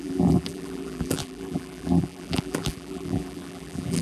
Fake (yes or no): yes